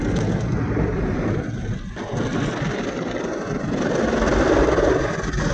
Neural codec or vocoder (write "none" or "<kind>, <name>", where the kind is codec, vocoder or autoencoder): none